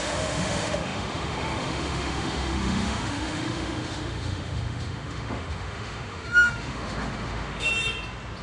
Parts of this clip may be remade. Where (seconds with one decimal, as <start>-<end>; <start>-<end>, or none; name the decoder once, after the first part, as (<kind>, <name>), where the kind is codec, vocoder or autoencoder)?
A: 0.0-7.7 (autoencoder, DAC-VAE)